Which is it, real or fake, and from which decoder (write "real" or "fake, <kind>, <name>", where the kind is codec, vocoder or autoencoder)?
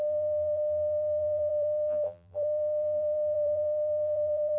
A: fake, vocoder, BigVGAN v2